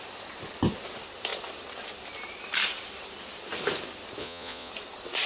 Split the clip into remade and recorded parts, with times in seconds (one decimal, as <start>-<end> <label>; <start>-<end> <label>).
0.0-4.2 recorded; 4.2-4.7 remade; 4.7-5.3 recorded